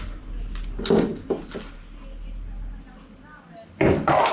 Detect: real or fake real